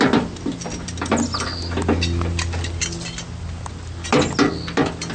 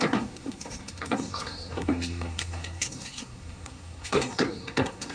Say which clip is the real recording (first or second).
first